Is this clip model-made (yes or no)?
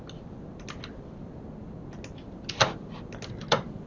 no